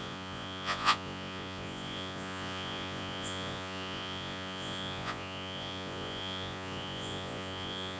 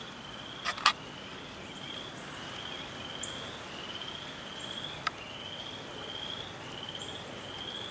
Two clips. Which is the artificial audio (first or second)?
first